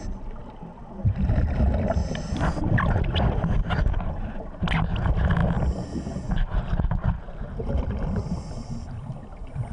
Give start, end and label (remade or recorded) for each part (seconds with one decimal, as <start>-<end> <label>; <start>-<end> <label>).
0.0-0.4 recorded; 0.4-1.3 remade; 1.3-2.0 recorded; 2.0-4.4 remade; 4.4-9.7 recorded